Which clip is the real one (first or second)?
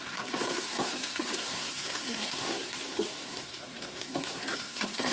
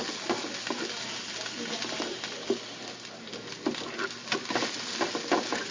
second